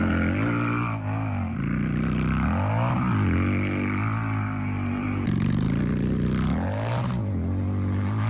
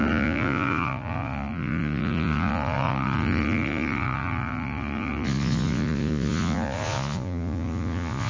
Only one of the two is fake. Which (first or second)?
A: second